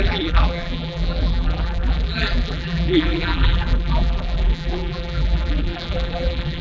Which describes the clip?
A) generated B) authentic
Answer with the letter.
A